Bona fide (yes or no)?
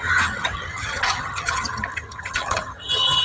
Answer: no